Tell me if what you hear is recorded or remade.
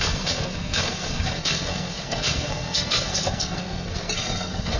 remade